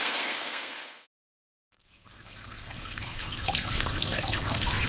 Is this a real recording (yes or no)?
no